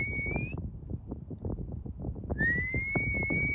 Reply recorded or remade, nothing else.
recorded